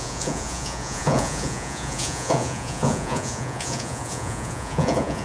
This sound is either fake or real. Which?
fake